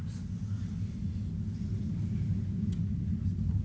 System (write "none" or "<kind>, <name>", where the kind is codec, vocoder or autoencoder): none